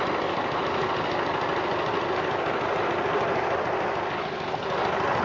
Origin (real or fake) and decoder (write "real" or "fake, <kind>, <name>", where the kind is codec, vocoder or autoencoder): real